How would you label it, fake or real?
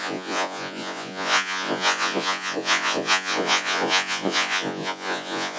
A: fake